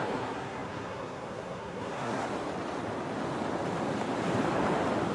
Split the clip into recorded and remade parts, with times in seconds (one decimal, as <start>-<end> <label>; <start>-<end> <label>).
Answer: 0.0-2.2 remade; 2.2-5.1 recorded